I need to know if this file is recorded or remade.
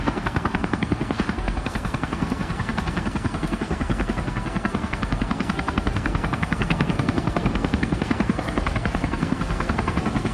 remade